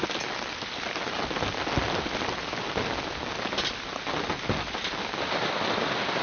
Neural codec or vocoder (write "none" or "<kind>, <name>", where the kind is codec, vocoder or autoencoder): none